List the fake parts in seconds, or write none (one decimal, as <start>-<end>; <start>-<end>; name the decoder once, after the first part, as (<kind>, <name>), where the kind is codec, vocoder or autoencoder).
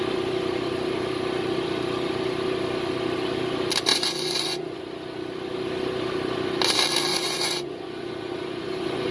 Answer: 3.9-4.8 (vocoder, Vocos); 7.1-9.1